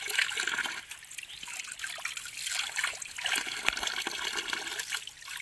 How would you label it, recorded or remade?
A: recorded